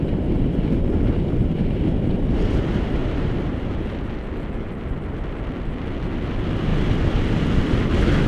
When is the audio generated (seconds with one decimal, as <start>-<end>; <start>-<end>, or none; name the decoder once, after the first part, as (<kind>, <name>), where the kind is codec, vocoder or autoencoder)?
none